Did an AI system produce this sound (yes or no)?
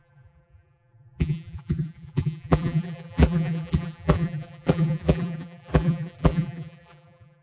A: yes